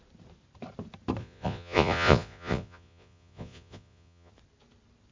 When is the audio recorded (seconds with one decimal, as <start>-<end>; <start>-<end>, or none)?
0.0-1.2; 4.3-5.1